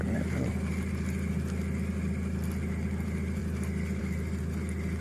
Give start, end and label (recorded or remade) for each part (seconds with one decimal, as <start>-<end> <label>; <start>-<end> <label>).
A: 0.0-5.0 recorded